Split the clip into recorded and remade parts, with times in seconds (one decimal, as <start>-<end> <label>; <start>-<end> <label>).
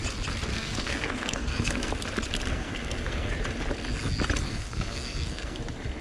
0.0-0.5 recorded; 0.5-1.9 remade; 1.9-2.5 recorded; 2.5-3.3 remade; 3.3-4.5 recorded; 4.5-5.6 remade; 5.6-6.0 recorded